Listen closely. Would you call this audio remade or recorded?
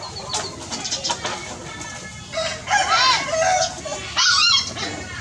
recorded